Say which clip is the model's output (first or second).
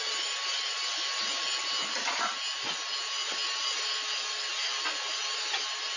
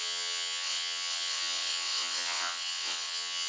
second